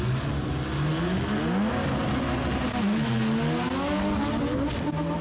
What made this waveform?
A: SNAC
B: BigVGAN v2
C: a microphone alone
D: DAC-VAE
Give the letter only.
C